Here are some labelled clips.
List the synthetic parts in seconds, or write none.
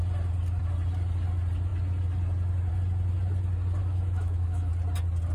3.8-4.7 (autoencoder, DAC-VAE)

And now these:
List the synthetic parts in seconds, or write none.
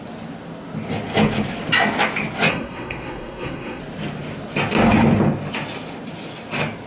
2.5-3.8 (codec, SNAC)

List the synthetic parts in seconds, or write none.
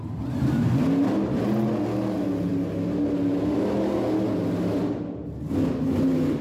none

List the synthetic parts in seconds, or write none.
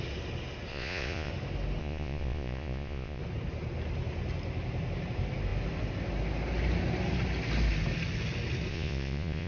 0.7-1.3 (vocoder, Vocos); 1.8-3.2; 8.7-9.5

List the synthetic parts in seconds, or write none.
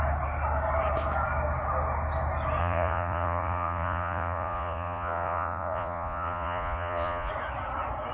2.6-7.3 (vocoder, Vocos)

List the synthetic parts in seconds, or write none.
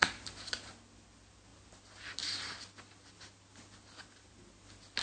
none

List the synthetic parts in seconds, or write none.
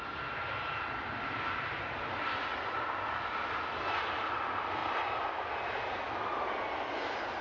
none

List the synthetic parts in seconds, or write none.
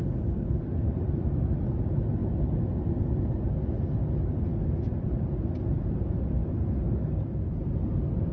none